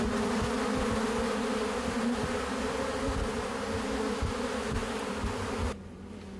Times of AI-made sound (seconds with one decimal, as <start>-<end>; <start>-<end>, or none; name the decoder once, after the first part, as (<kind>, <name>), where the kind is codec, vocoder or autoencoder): 4.8-5.6 (vocoder, BigVGAN v2)